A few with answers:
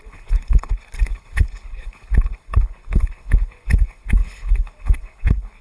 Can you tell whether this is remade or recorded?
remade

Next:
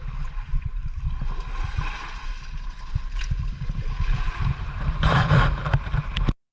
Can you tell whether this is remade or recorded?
recorded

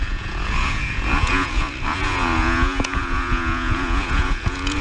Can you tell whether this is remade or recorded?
remade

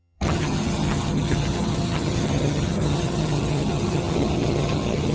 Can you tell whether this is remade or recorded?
remade